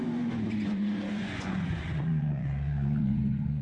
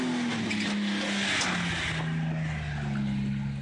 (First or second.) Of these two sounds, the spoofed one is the first